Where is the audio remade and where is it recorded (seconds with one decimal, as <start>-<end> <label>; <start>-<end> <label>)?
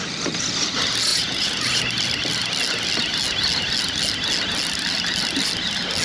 0.0-1.1 recorded; 1.1-1.8 remade; 1.8-6.0 recorded